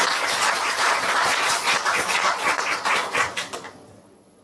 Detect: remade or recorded remade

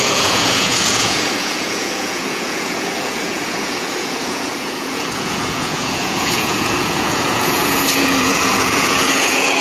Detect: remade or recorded remade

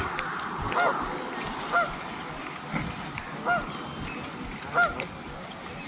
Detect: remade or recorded recorded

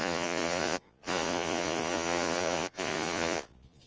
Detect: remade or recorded remade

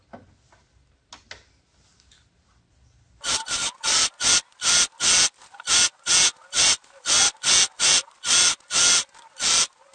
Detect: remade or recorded recorded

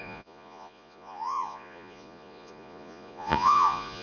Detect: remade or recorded remade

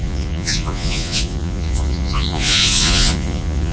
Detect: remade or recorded remade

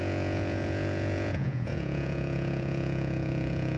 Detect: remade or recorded remade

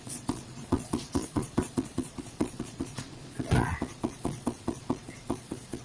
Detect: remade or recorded remade